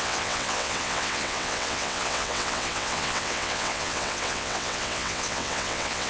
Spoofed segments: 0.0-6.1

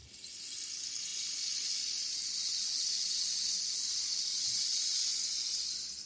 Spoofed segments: none

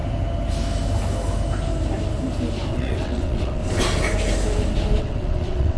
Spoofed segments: 2.7-3.6; 5.0-5.8

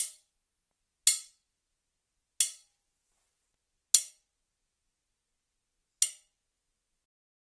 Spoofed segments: none

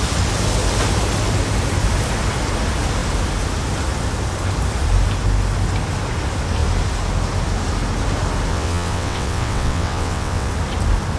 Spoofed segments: 8.5-10.5